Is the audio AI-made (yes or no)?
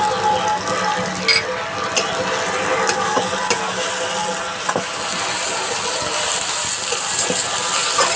no